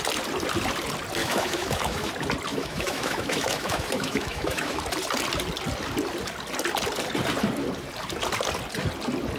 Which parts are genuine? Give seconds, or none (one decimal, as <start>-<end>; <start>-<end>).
0.0-1.2; 2.1-2.5; 4.8-9.4

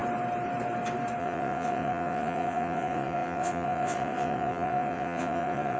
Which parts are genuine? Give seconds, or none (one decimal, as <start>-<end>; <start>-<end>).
0.0-1.2

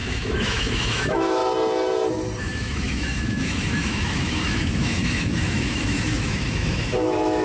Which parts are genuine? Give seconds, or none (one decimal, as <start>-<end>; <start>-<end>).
1.4-2.4

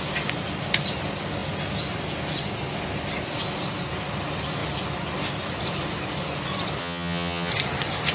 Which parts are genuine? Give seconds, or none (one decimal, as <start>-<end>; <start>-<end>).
0.0-6.8; 7.5-8.1

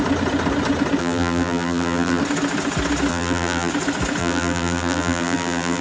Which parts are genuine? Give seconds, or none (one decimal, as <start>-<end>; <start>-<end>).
0.0-1.0; 2.2-3.1; 3.7-4.2

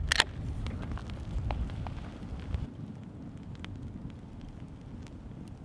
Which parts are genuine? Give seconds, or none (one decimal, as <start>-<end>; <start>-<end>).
0.0-5.6